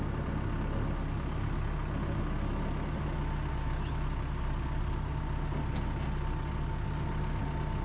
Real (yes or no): yes